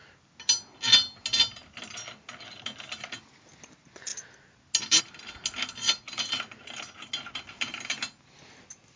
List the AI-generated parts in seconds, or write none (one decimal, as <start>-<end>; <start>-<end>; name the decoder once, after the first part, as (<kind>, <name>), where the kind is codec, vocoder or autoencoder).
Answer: none

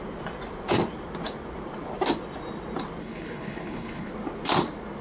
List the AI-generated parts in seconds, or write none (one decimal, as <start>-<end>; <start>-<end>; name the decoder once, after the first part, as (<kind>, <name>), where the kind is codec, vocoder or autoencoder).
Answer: 3.0-4.1 (codec, HILCodec)

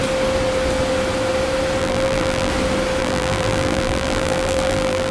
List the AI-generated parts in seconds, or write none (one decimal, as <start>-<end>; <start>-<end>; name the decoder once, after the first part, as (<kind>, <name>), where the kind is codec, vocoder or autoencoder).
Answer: 1.8-2.5 (vocoder, BigVGAN v2); 3.0-5.1

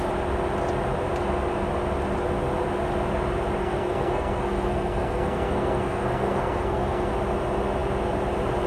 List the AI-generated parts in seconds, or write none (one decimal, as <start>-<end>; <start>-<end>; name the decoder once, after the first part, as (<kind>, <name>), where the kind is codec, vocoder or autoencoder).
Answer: 3.6-7.1 (codec, SNAC)

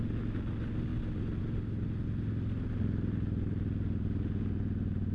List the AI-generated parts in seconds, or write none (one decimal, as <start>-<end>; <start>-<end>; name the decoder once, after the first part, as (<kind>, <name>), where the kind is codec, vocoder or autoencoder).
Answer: none

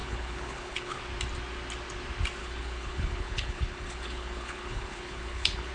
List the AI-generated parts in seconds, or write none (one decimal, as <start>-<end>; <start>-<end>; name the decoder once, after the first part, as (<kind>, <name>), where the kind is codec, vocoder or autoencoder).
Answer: 0.0-1.0 (codec, HILCodec); 2.4-5.7

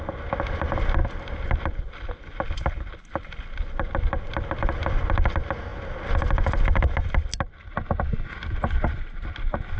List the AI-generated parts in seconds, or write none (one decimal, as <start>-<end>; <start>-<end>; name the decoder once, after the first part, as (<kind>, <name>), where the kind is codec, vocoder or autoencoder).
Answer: none

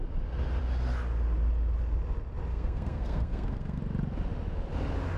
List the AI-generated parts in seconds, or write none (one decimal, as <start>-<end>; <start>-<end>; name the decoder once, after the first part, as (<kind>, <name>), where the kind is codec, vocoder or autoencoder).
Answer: 2.5-3.8 (codec, SNAC)